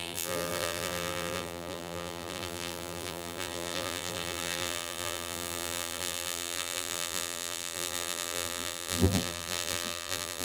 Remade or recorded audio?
remade